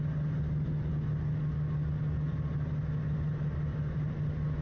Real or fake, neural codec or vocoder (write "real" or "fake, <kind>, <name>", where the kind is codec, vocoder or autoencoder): real